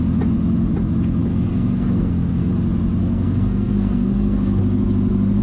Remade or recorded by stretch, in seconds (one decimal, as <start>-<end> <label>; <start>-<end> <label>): 0.0-1.3 recorded; 1.3-2.5 remade; 2.5-3.0 recorded; 3.0-4.6 remade; 4.6-5.4 recorded